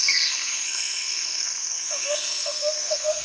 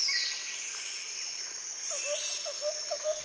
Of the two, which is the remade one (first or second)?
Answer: first